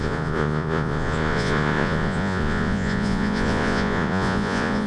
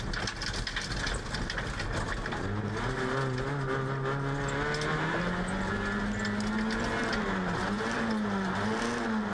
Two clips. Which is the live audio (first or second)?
second